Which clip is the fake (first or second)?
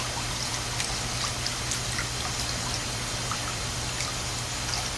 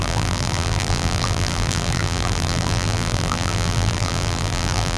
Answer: second